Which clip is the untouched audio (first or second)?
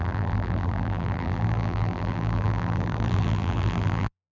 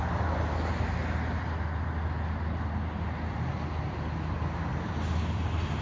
second